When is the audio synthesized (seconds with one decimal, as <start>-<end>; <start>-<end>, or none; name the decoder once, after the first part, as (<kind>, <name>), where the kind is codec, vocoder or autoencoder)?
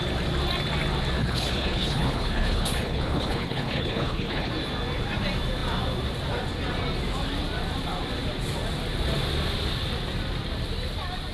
1.2-4.5 (codec, HILCodec)